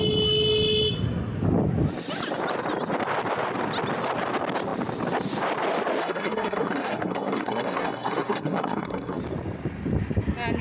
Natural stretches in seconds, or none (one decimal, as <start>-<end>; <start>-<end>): 0.0-6.0; 9.2-10.6